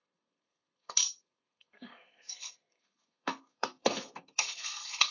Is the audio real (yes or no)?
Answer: no